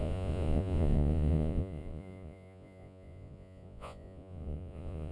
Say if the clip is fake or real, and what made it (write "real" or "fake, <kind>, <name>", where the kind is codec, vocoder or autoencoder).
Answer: fake, vocoder, Vocos